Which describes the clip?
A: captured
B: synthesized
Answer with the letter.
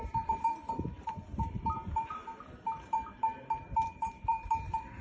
B